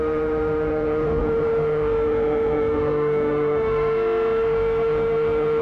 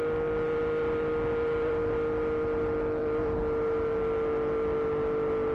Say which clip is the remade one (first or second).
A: first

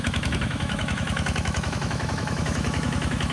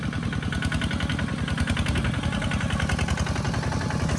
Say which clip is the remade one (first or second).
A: first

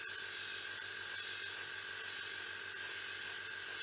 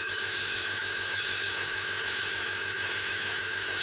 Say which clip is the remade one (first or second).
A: second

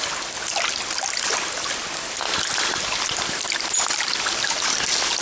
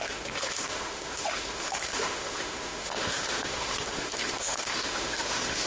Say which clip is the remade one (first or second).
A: second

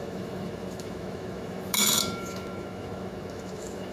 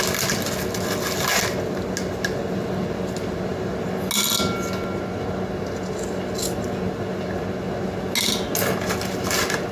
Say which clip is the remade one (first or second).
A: first